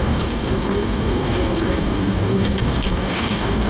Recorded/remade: remade